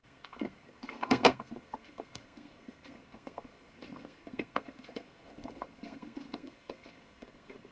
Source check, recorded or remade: remade